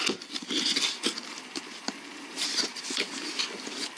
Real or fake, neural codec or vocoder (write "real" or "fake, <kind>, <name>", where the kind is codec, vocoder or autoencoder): real